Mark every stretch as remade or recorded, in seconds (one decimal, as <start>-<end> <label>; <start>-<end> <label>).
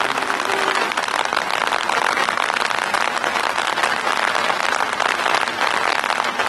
0.0-6.5 recorded